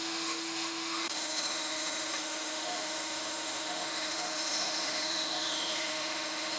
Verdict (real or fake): fake